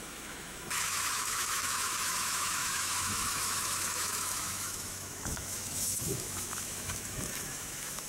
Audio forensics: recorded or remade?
remade